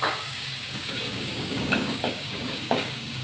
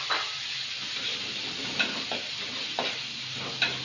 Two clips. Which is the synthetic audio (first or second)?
first